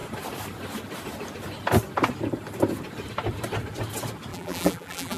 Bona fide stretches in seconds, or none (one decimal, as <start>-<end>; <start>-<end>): 0.0-4.3